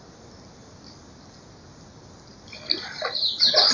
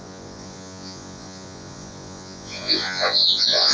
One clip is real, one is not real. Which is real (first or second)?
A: first